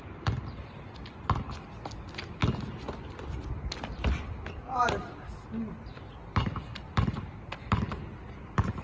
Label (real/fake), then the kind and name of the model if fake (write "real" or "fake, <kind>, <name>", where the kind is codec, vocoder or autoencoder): real